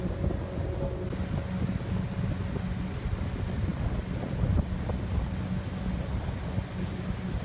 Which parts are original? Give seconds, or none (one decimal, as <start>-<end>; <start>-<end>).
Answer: 0.0-7.4